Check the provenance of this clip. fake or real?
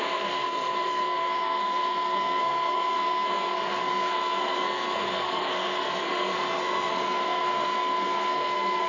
fake